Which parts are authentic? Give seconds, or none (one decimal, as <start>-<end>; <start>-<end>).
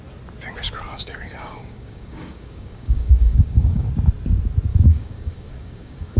0.0-0.9; 3.9-4.7